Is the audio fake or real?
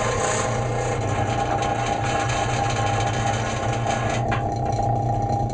real